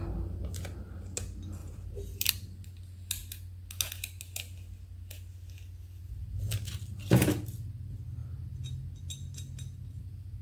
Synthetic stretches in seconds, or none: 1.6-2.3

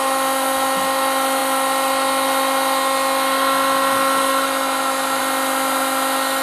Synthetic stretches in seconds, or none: none

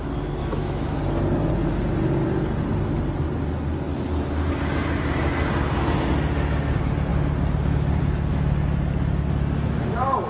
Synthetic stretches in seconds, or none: 0.4-1.0

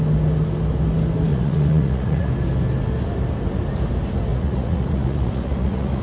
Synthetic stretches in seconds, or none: 1.3-2.3; 4.3-6.0